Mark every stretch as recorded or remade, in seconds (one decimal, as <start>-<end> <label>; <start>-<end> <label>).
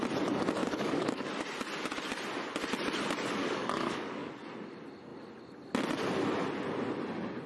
0.0-0.6 recorded; 0.6-1.3 remade; 1.3-3.4 recorded; 3.4-4.3 remade; 4.3-7.5 recorded